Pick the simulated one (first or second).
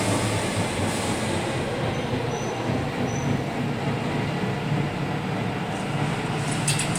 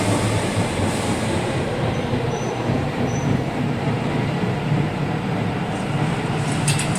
second